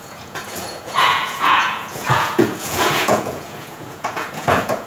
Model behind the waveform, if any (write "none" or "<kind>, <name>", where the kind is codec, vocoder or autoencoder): vocoder, Vocos